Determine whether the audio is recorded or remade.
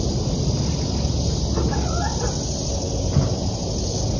recorded